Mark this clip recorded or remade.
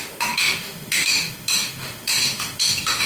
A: remade